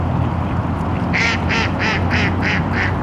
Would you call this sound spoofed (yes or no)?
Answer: no